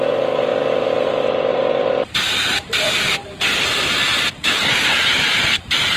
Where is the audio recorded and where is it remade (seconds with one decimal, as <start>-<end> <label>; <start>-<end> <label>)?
0.0-0.5 remade; 0.5-1.1 recorded; 1.1-6.0 remade